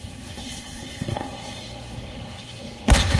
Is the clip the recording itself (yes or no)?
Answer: no